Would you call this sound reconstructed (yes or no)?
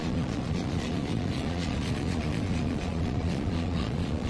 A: yes